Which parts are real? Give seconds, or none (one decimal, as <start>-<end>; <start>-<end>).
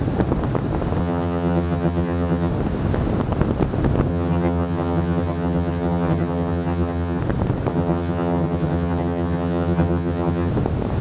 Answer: 0.0-1.0; 2.5-4.1; 7.2-7.7; 10.5-11.0